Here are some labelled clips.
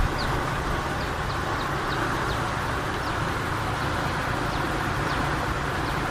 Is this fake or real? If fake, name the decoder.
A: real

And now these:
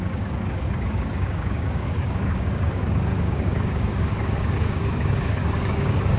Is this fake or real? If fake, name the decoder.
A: fake, codec, DAC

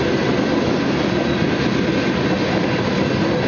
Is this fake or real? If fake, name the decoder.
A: real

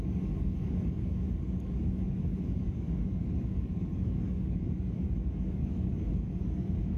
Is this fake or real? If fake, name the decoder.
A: fake, codec, DAC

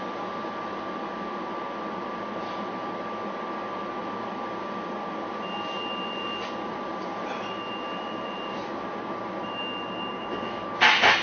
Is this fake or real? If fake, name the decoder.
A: real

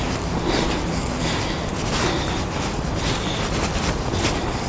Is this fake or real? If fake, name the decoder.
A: real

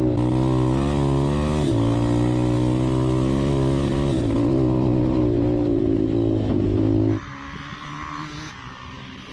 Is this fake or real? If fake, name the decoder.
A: real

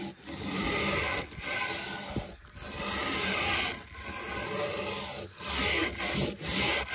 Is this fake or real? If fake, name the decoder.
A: real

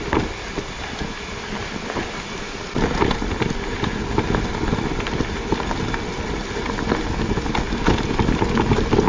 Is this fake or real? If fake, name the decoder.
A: real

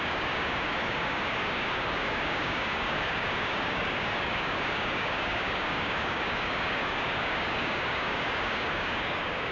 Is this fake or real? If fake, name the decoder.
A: fake, codec, DAC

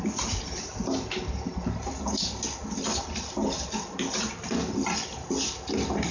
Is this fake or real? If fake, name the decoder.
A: real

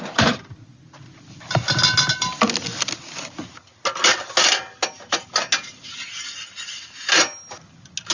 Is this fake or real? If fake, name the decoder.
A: real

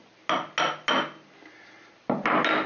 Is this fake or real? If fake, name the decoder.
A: real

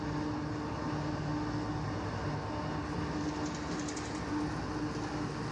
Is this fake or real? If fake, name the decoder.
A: real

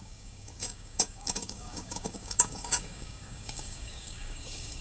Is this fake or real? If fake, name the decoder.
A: fake, codec, DAC